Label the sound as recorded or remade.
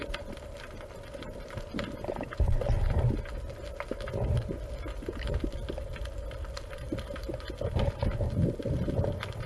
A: recorded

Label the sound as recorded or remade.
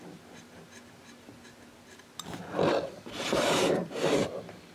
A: recorded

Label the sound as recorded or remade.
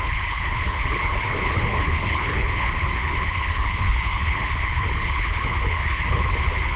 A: remade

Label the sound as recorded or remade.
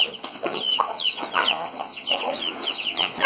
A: remade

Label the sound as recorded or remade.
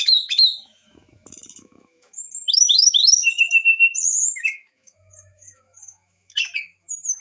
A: remade